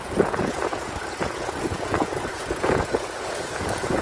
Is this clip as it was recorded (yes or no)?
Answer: no